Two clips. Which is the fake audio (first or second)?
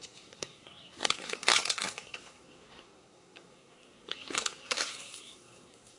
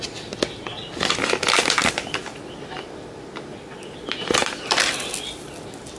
first